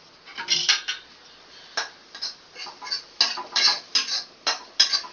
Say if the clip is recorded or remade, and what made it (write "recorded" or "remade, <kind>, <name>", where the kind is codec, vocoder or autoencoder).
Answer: recorded